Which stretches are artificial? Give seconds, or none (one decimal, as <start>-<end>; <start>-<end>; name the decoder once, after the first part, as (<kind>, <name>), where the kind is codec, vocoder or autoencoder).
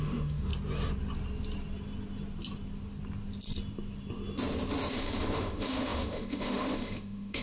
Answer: 0.0-0.5 (autoencoder, DAC-VAE); 4.9-7.4